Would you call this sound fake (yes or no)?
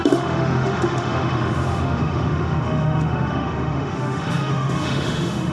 yes